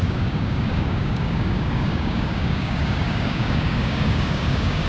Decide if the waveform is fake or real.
fake